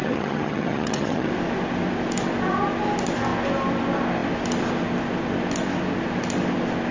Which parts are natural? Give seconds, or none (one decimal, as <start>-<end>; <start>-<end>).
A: 1.3-6.9